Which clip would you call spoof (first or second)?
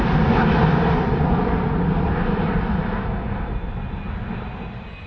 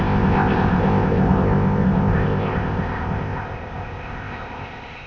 second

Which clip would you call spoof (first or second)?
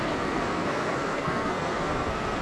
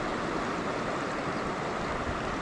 first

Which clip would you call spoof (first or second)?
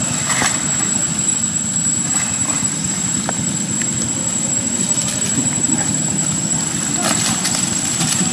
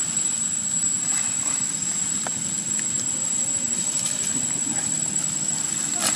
first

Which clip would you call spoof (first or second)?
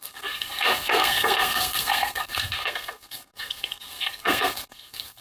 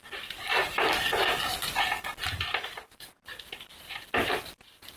first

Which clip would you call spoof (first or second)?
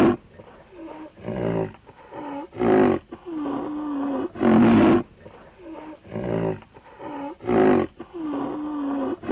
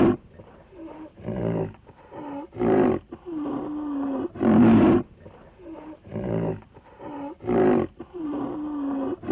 second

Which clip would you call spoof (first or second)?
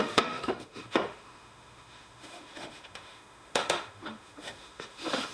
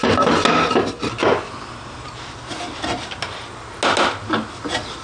first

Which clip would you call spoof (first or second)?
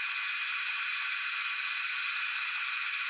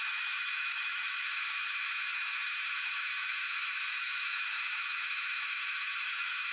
second